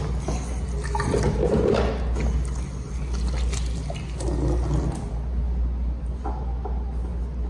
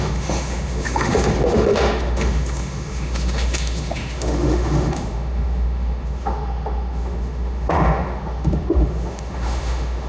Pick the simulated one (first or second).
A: second